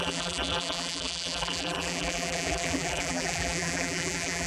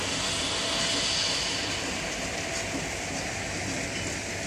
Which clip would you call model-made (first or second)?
first